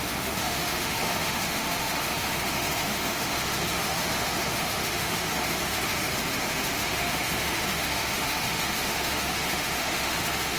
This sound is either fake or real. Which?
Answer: fake